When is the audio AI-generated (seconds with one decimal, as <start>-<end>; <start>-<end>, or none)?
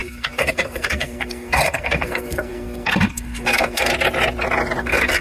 0.0-3.9; 4.8-5.2